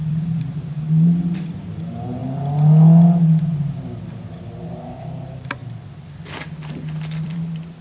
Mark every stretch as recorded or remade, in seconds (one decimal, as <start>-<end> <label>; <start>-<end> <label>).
0.0-2.2 remade; 2.2-4.1 recorded; 4.1-5.6 remade; 5.6-7.2 recorded; 7.2-7.8 remade